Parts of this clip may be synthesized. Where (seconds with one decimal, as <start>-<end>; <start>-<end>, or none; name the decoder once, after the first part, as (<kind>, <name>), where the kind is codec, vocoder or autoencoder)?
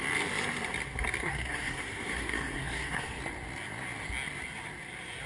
1.2-3.2 (codec, SNAC)